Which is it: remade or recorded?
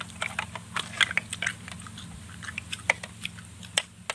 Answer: recorded